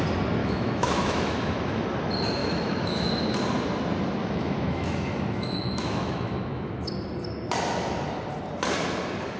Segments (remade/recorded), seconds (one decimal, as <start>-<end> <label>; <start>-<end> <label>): 0.0-0.4 recorded; 0.4-1.8 remade; 1.8-2.4 recorded; 2.4-3.1 remade; 3.1-4.2 recorded; 4.2-6.9 remade; 6.9-9.4 recorded